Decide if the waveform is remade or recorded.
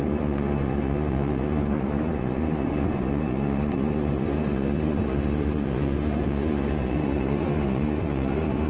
remade